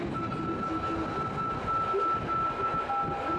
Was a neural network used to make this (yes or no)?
no